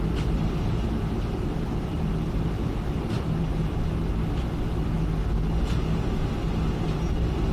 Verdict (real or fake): real